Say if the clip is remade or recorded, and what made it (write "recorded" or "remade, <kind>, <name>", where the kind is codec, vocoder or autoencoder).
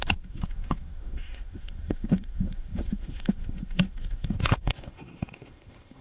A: remade, autoencoder, DAC-VAE